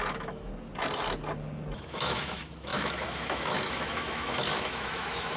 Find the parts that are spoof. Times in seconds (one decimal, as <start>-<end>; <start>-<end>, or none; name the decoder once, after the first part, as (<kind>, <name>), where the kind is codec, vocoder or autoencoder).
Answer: 0.0-0.5 (autoencoder, DAC-VAE); 1.8-5.4